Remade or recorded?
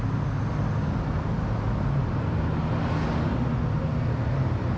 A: recorded